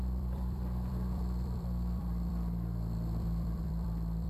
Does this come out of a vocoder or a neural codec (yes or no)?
yes